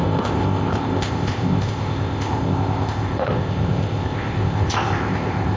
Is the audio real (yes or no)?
no